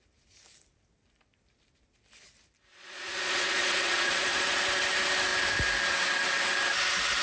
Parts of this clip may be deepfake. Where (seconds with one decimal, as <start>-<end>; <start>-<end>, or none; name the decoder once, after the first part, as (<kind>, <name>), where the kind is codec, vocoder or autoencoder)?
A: 2.7-4.6 (vocoder, Vocos)